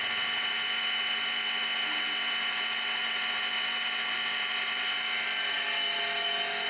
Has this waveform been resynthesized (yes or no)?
no